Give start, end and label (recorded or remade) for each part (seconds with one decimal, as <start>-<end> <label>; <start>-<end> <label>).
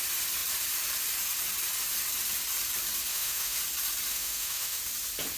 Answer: 0.0-3.1 recorded; 3.1-3.6 remade; 3.6-4.1 recorded; 4.1-4.8 remade; 4.8-5.4 recorded